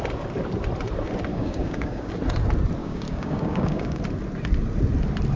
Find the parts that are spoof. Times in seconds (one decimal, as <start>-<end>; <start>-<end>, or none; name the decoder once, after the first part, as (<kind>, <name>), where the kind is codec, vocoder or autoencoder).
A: 1.3-2.1 (codec, DAC); 2.8-4.0